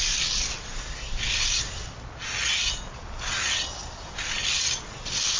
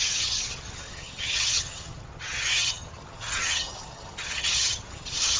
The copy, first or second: second